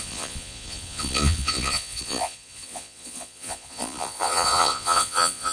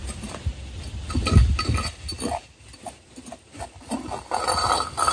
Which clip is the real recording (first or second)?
second